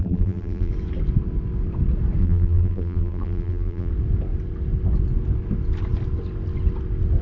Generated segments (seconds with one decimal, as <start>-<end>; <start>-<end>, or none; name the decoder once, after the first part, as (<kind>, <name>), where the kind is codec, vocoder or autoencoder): 0.0-0.7 (vocoder, BigVGAN v2); 2.2-3.9